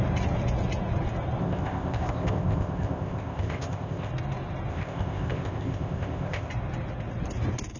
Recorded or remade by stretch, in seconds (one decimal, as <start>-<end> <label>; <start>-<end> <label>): 0.0-1.4 recorded; 1.4-4.1 remade; 4.1-4.7 recorded; 4.7-6.5 remade; 6.5-7.8 recorded